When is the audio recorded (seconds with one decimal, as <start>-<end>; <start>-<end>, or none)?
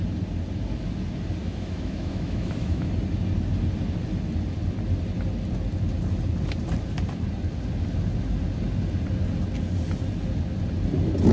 0.0-1.4; 2.9-11.3